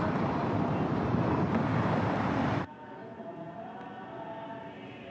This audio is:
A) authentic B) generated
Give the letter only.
A